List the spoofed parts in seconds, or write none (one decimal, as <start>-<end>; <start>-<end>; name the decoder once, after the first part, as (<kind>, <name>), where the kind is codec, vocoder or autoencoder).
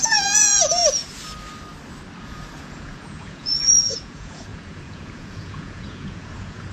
0.0-1.0 (vocoder, Vocos); 2.2-6.7